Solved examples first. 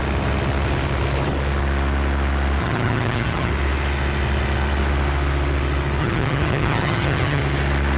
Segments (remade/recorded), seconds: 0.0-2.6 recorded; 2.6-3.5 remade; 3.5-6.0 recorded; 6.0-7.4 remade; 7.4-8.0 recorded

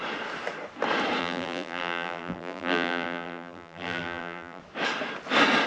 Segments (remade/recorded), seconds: 0.0-1.2 recorded; 1.2-4.6 remade; 4.6-5.7 recorded

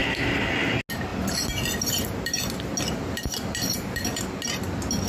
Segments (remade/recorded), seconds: 0.0-1.1 recorded; 1.1-4.2 remade; 4.2-5.1 recorded

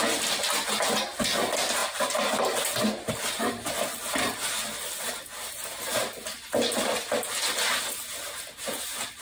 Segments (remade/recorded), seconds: 0.0-9.2 recorded